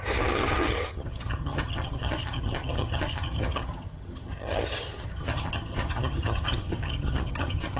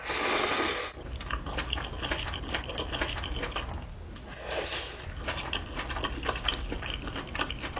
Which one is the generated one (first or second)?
first